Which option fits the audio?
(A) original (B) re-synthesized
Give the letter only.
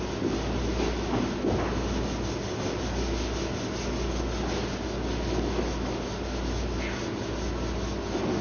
A